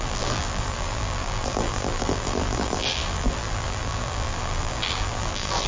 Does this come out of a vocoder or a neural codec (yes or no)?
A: yes